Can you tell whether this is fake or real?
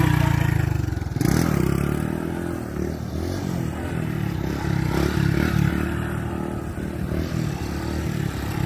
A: real